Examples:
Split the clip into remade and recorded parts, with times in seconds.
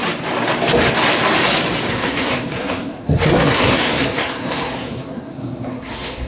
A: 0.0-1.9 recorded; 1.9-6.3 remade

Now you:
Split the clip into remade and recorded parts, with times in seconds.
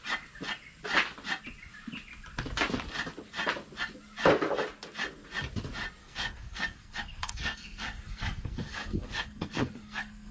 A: 0.0-6.0 recorded; 6.0-10.3 remade